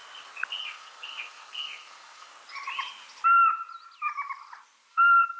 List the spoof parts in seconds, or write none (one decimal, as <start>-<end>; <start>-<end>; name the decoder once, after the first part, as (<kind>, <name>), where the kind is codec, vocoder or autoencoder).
0.6-2.3 (codec, SNAC); 4.9-5.4